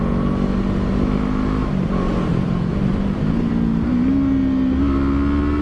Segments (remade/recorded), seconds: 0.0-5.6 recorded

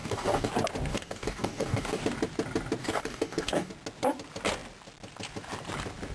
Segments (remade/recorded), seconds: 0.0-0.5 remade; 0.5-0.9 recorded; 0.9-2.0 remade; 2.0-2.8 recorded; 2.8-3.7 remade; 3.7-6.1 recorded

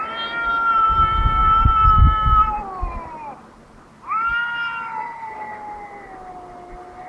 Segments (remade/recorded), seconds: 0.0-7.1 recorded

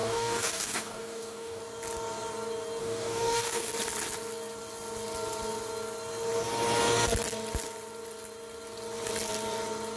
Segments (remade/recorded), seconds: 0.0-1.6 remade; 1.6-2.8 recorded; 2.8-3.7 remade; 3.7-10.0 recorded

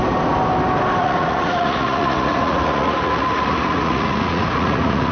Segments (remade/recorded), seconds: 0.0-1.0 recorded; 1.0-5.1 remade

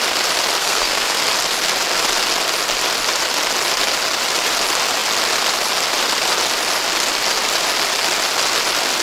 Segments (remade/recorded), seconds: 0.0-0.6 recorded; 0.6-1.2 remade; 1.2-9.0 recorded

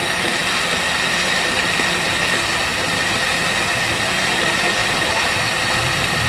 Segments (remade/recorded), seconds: 0.0-4.8 recorded; 4.8-6.3 remade

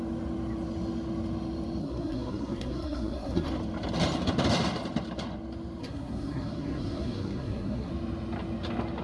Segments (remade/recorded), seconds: 0.0-1.8 recorded; 1.8-3.5 remade; 3.5-5.8 recorded; 5.8-7.9 remade; 7.9-9.0 recorded